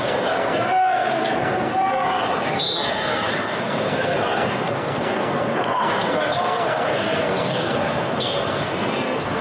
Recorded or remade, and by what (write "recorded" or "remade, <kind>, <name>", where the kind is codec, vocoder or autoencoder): remade, codec, SNAC